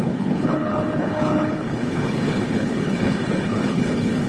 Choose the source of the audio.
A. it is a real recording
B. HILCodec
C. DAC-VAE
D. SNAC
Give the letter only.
B